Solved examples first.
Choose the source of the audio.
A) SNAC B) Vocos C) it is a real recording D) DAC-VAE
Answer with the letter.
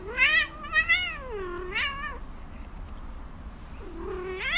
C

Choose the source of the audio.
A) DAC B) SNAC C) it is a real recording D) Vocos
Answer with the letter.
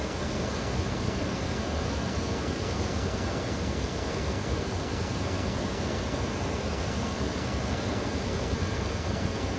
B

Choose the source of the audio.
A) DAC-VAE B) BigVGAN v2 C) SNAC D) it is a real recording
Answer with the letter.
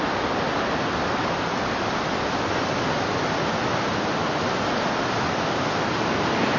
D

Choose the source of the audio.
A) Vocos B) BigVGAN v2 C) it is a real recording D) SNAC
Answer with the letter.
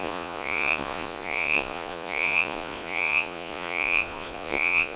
A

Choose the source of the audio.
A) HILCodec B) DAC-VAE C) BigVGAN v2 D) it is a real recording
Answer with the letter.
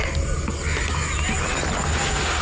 D